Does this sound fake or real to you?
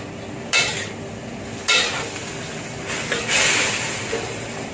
real